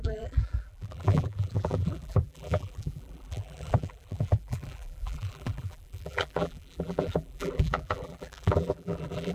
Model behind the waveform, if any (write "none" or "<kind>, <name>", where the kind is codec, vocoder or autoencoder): vocoder, BigVGAN v2